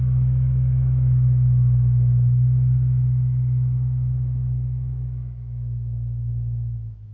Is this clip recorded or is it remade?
remade